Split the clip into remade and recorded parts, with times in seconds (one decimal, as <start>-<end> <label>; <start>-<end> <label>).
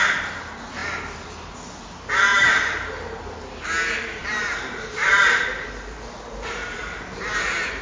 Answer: 0.0-2.3 recorded; 2.3-3.2 remade; 3.2-4.2 recorded; 4.2-7.8 remade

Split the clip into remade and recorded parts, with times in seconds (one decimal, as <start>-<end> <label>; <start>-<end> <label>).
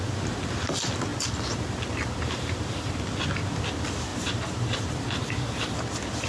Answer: 0.0-4.1 recorded; 4.1-4.9 remade; 4.9-6.3 recorded